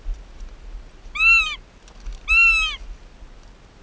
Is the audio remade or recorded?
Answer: recorded